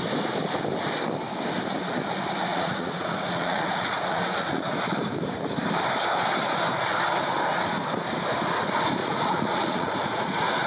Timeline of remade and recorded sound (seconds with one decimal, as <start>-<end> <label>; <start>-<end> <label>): 0.0-2.5 recorded; 2.5-4.7 remade; 4.7-9.0 recorded; 9.0-10.7 remade